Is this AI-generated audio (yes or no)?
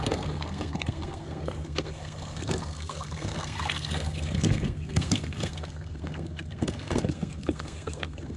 yes